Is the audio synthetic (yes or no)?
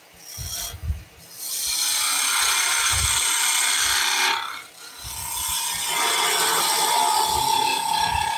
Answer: no